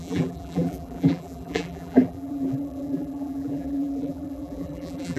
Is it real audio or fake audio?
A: fake